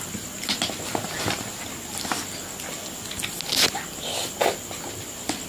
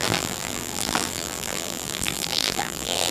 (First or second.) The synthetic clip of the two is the second